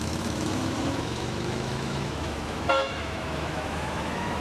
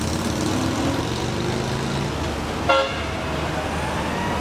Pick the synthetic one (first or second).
first